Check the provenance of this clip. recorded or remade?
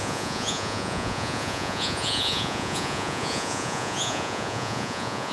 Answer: remade